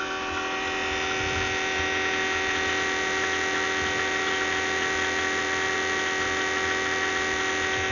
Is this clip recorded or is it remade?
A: recorded